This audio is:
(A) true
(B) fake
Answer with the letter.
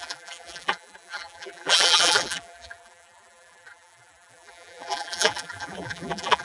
B